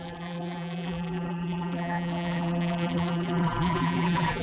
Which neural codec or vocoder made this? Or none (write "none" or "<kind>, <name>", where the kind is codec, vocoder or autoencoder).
vocoder, BigVGAN v2